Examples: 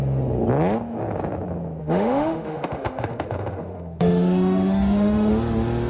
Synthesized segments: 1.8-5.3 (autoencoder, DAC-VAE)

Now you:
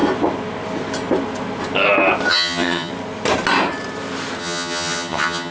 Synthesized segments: 2.3-2.9 (vocoder, HiFi-GAN); 4.4-5.5

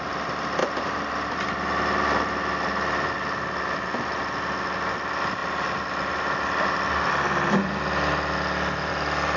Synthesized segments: none